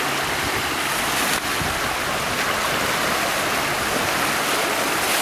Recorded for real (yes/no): yes